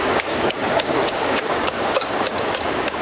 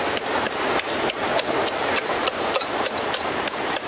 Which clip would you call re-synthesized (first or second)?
first